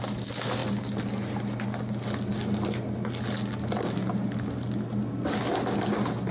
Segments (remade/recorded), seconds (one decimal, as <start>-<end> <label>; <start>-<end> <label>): 0.0-6.3 recorded